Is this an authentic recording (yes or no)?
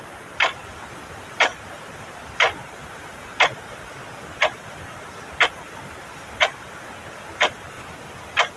yes